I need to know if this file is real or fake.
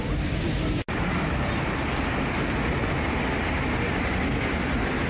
real